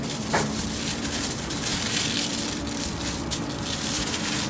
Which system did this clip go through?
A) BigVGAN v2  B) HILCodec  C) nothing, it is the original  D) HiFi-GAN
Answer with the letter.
A